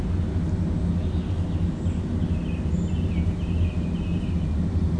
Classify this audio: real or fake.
real